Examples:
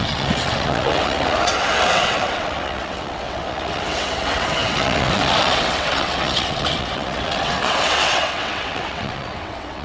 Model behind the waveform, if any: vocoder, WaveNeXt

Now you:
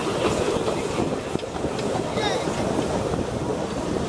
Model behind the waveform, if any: none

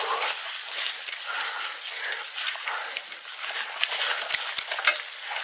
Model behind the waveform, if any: none